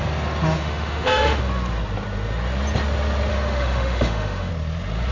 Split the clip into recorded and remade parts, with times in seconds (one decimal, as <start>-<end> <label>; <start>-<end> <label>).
0.0-0.6 recorded; 0.6-1.4 remade; 1.4-3.3 recorded; 3.3-4.5 remade; 4.5-5.1 recorded

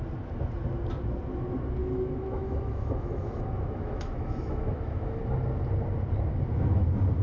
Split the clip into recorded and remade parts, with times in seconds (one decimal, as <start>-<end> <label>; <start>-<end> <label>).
0.0-1.8 recorded; 1.8-5.2 remade; 5.2-7.2 recorded

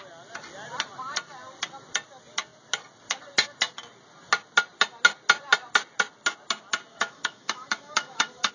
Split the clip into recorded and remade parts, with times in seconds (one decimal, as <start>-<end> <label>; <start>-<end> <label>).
0.0-6.9 recorded; 6.9-8.5 remade

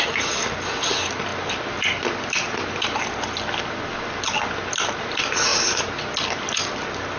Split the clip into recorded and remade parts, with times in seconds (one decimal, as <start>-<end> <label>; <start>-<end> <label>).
0.0-7.2 recorded

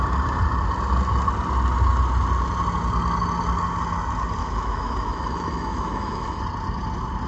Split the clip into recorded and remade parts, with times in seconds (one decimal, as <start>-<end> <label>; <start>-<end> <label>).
0.0-4.4 recorded; 4.4-6.4 remade; 6.4-7.3 recorded

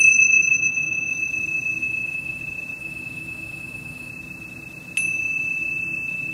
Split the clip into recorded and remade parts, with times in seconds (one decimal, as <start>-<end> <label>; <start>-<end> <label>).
0.0-0.5 recorded; 0.5-1.1 remade; 1.1-1.8 recorded; 1.8-2.4 remade; 2.4-2.8 recorded; 2.8-4.1 remade; 4.1-6.3 recorded